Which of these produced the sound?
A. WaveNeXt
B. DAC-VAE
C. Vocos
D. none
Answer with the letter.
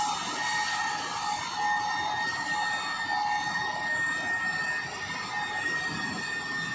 D